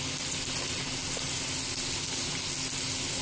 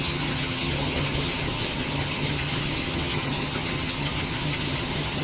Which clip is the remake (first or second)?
second